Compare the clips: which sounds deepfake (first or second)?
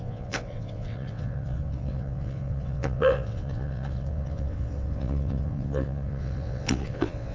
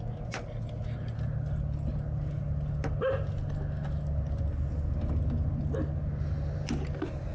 first